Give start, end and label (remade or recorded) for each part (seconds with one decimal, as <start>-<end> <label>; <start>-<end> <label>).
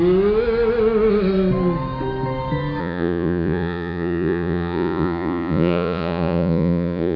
0.0-2.8 recorded; 2.8-7.2 remade